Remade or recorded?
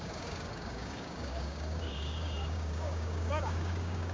remade